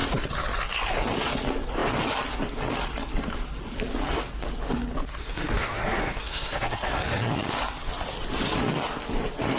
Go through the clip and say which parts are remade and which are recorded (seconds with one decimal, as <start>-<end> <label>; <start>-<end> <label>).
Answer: 0.0-5.2 recorded; 5.2-7.0 remade; 7.0-9.6 recorded